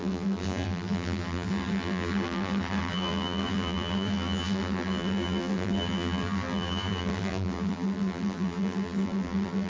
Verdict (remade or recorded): remade